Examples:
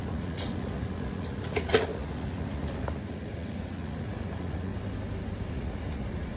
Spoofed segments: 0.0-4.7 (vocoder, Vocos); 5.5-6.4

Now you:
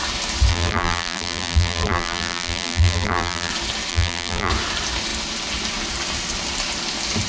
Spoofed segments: 0.5-3.5 (vocoder, BigVGAN v2); 3.9-4.5

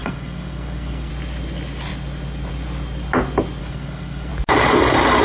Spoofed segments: 0.0-1.1 (codec, SNAC); 3.6-4.3

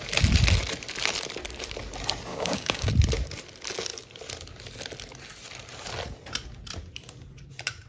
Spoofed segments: 2.3-2.9 (codec, DAC)